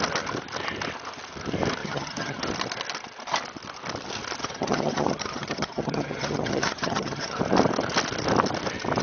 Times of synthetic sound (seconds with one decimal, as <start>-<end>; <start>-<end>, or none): 1.8-2.4; 4.4-7.4